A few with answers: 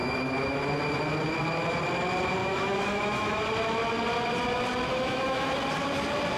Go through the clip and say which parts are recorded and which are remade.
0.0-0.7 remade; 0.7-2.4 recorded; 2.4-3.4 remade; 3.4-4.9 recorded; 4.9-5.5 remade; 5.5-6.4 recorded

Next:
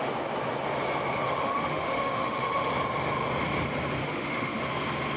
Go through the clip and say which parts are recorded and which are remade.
0.0-1.4 recorded; 1.4-2.7 remade; 2.7-4.0 recorded; 4.0-4.6 remade; 4.6-5.2 recorded

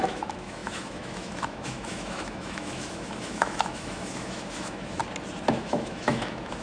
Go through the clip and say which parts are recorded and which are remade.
0.0-5.0 remade; 5.0-5.5 recorded; 5.5-6.6 remade

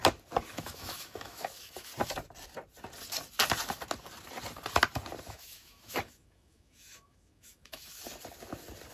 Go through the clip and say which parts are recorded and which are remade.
0.0-0.5 recorded; 0.5-1.9 remade; 1.9-5.3 recorded; 5.3-8.0 remade; 8.0-8.9 recorded

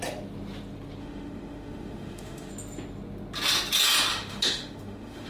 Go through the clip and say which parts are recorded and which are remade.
0.0-1.0 recorded; 1.0-2.5 remade; 2.5-4.1 recorded; 4.1-5.3 remade

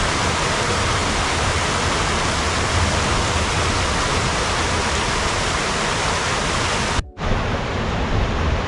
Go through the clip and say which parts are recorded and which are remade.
0.0-8.7 recorded

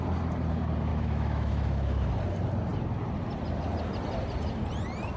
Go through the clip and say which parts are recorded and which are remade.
0.0-0.9 recorded; 0.9-2.1 remade; 2.1-5.2 recorded